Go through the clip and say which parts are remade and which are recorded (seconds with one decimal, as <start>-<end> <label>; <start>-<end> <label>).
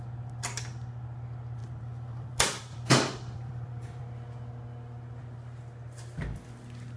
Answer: 0.0-1.6 recorded; 1.6-4.0 remade; 4.0-7.0 recorded